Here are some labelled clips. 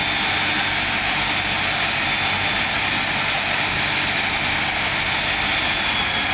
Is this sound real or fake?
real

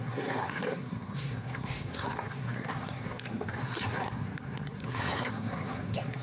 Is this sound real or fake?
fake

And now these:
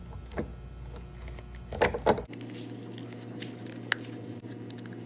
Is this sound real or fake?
real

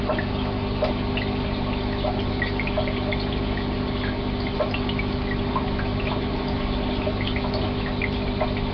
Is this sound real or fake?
real